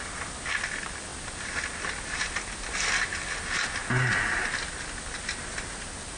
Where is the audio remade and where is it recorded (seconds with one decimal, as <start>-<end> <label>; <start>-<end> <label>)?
0.0-6.2 recorded